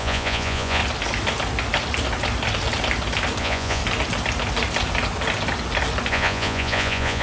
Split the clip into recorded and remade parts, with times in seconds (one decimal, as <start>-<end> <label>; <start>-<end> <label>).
0.0-0.8 remade; 0.8-3.4 recorded; 3.4-3.8 remade; 3.8-6.1 recorded; 6.1-7.2 remade